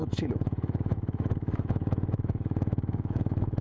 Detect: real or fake fake